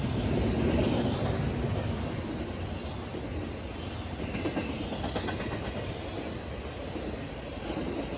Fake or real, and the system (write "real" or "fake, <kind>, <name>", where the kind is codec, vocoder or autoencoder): real